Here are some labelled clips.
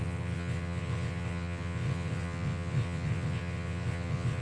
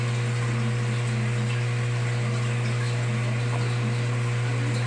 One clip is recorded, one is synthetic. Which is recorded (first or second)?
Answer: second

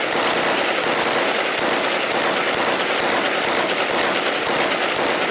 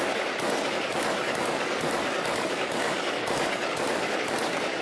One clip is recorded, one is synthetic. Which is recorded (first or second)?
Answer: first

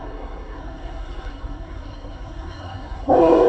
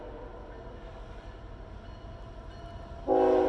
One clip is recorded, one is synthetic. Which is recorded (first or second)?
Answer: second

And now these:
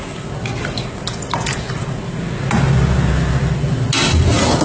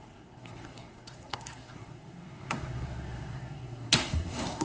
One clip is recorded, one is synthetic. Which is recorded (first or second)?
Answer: first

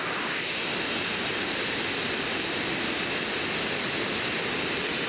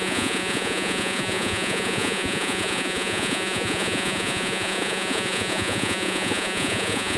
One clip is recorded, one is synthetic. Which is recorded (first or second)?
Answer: first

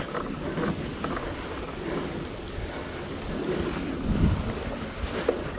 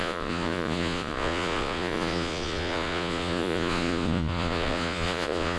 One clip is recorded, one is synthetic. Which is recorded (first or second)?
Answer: first